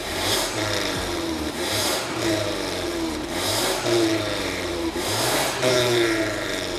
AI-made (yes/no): yes